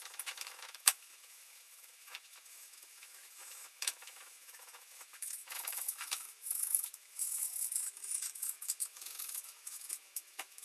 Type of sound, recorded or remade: remade